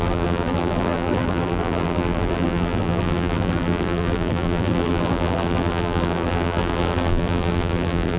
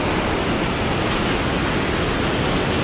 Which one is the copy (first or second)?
first